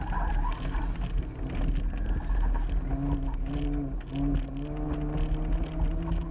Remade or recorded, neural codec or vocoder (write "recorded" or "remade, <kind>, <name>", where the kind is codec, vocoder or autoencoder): recorded